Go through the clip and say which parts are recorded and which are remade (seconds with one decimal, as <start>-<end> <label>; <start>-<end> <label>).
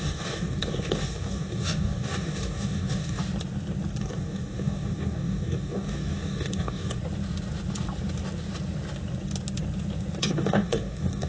0.0-3.2 remade; 3.2-4.0 recorded; 4.0-7.0 remade; 7.0-10.2 recorded; 10.2-11.3 remade